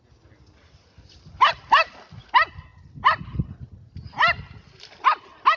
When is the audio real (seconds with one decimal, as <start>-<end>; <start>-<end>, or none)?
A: 0.0-5.6